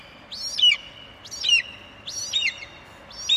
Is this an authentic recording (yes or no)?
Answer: yes